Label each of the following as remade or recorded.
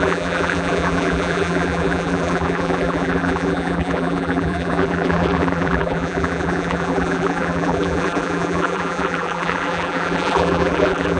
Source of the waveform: remade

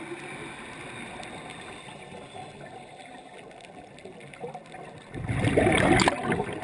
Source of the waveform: recorded